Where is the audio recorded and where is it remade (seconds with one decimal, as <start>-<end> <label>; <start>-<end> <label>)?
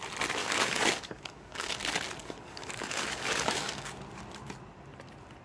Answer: 0.0-0.4 recorded; 0.4-1.7 remade; 1.7-2.2 recorded; 2.2-3.9 remade; 3.9-5.4 recorded